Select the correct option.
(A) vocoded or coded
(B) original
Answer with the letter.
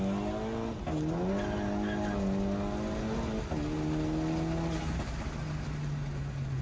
B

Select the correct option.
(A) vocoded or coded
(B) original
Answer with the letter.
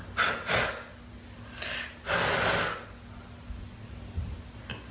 B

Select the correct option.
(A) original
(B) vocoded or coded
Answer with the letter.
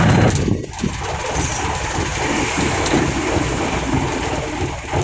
A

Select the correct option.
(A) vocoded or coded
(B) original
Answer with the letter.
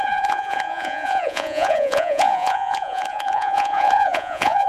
A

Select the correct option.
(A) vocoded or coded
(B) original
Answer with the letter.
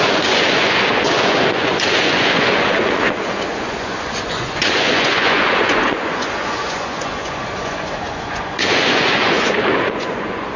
A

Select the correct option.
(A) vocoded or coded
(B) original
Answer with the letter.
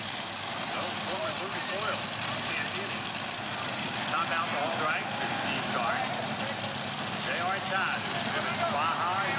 B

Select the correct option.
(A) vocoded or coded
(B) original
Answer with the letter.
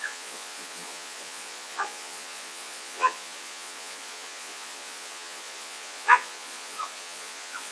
A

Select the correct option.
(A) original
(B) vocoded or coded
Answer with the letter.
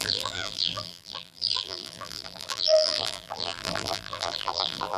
B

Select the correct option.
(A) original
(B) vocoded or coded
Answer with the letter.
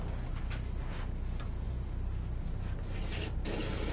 A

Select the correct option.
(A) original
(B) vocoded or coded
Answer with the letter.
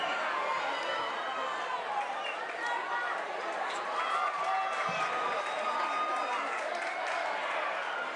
A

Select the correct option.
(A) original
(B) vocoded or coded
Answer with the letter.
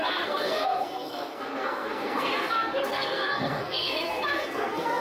B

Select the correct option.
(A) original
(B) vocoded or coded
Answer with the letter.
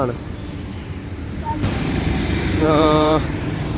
B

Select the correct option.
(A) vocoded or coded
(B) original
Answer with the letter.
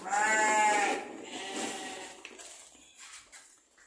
B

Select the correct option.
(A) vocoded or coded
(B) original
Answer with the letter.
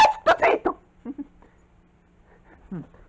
B